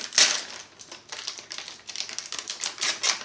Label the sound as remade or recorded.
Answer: recorded